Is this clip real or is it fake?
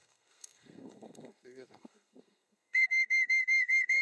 fake